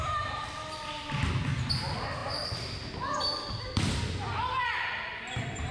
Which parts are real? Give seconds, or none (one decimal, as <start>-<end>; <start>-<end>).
0.0-5.7